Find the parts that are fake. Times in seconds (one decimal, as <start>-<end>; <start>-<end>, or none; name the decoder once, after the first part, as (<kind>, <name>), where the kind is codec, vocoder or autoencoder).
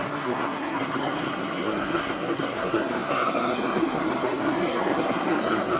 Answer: 0.0-5.8 (codec, SNAC)